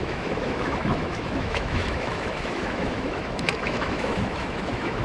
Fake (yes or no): yes